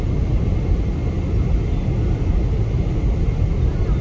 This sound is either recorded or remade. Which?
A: recorded